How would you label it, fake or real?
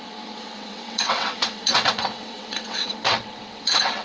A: fake